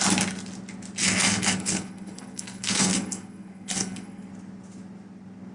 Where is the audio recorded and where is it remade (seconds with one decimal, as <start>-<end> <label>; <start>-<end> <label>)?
0.0-1.0 recorded; 1.0-4.3 remade; 4.3-5.5 recorded